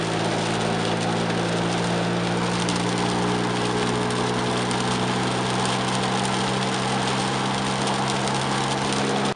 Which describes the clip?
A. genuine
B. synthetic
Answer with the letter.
A